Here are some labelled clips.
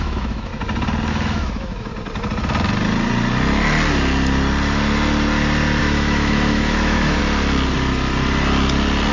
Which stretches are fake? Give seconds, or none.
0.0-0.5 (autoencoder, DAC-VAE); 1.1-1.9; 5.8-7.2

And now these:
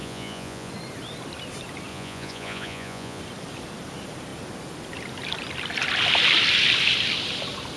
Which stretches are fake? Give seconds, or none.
0.0-0.7 (vocoder, Vocos); 1.9-3.2